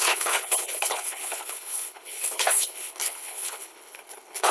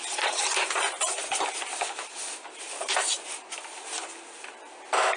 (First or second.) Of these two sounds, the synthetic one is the first